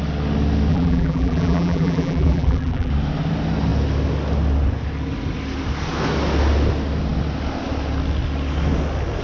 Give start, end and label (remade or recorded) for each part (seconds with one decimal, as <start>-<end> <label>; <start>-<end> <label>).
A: 0.0-0.7 recorded; 0.7-2.9 remade; 2.9-9.2 recorded